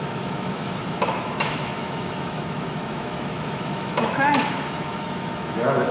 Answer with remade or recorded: remade